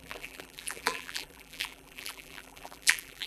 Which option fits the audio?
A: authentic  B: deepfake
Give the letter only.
B